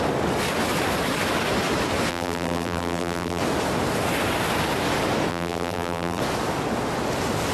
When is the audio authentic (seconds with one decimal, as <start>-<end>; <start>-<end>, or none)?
0.0-2.1; 3.4-5.3; 6.2-7.5